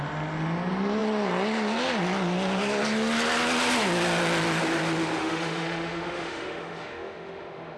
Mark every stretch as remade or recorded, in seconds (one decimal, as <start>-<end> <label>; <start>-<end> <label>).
0.0-5.2 recorded; 5.2-7.8 remade